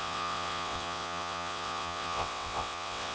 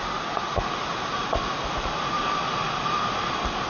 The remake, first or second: first